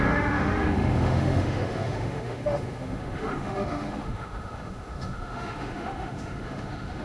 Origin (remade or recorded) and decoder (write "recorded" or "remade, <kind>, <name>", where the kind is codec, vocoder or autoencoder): remade, autoencoder, DAC-VAE